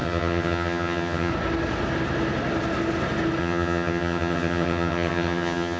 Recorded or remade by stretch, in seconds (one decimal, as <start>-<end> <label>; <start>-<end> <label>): 0.0-1.3 remade; 1.3-3.4 recorded; 3.4-5.8 remade